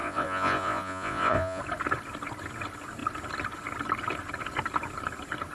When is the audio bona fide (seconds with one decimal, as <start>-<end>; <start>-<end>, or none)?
1.6-5.5